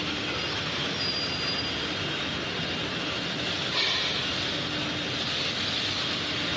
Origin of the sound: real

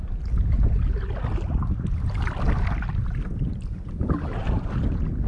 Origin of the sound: real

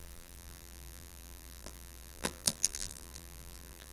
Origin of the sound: fake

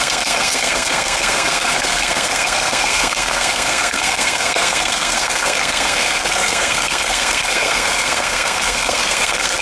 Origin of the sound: fake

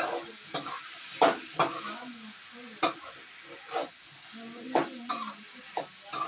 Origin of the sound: real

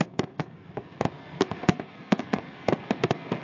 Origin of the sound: fake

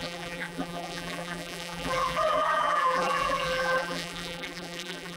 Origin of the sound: fake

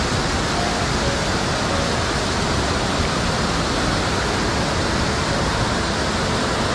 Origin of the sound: real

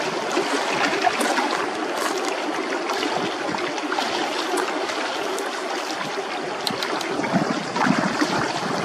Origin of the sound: real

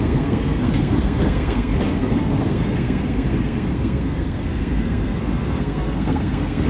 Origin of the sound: fake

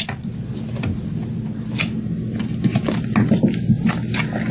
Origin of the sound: real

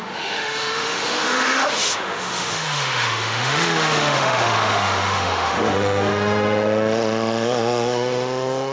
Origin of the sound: fake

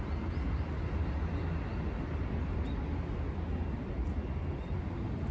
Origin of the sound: real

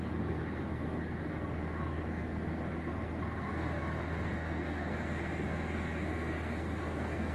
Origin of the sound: fake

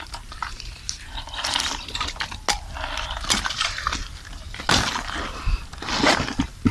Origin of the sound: real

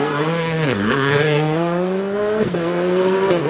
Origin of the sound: fake